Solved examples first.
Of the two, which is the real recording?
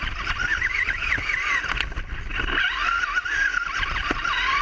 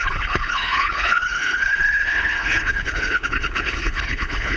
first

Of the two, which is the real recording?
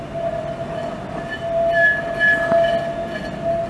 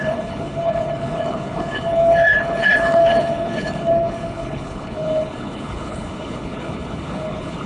first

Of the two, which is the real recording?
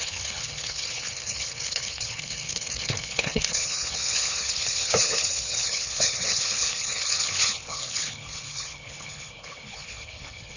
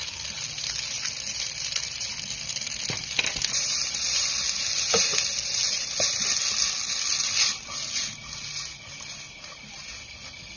second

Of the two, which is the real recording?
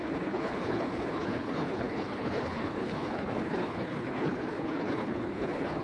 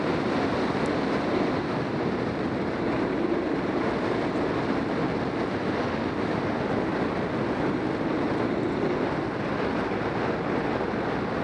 second